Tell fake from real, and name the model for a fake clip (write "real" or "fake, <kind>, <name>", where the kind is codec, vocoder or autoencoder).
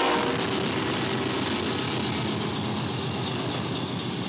real